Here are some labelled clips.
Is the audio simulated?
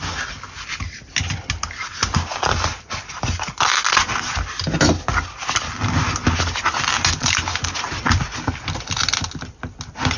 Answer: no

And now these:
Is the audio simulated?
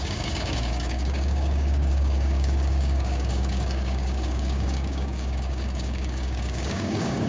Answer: yes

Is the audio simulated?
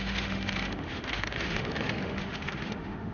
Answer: yes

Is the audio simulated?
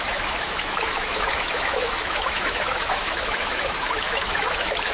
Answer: yes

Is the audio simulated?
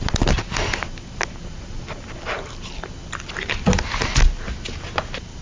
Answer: no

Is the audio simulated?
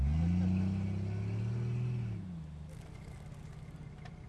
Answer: no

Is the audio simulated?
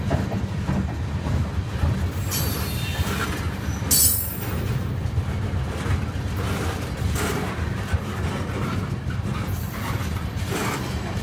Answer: no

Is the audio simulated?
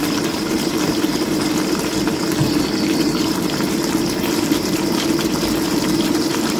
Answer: yes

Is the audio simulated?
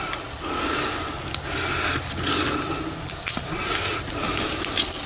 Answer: no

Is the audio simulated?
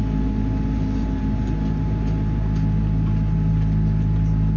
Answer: no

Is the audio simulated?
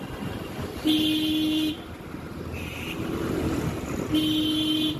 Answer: no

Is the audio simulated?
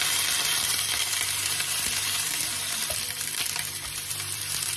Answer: yes